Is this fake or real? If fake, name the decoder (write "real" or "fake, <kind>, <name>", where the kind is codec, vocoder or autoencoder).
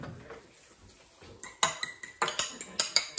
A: real